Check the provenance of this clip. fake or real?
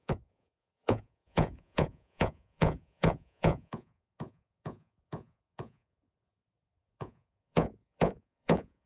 fake